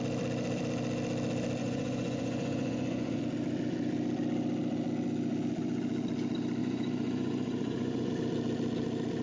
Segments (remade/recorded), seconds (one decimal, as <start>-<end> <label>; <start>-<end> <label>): 0.0-1.6 recorded; 1.6-3.2 remade; 3.2-6.6 recorded; 6.6-8.1 remade; 8.1-9.2 recorded